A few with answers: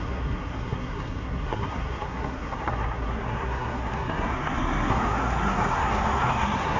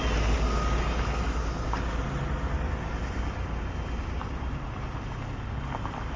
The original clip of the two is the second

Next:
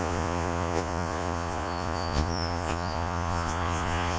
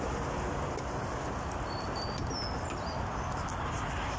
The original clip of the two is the second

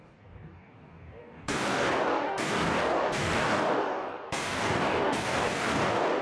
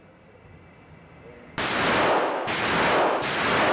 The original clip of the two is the second